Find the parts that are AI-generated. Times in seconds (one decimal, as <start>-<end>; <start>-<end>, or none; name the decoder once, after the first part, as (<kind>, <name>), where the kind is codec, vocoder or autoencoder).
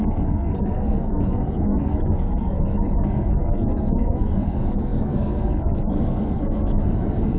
0.0-7.4 (codec, SNAC)